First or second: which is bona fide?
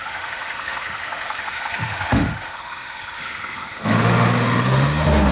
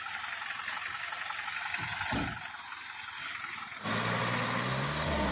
second